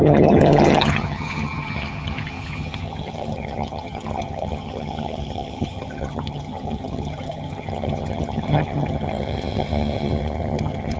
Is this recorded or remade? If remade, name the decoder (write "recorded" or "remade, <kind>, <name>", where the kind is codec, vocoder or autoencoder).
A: remade, vocoder, HiFi-GAN